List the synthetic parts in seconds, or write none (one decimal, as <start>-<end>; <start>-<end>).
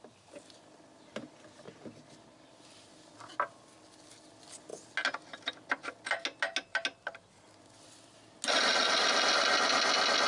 none